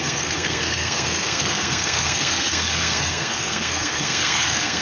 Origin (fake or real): fake